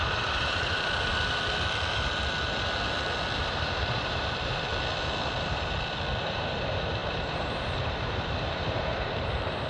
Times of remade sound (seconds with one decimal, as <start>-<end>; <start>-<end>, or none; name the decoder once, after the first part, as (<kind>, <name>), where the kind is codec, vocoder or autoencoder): 0.0-1.1 (vocoder, BigVGAN v2); 3.4-4.7; 6.2-9.7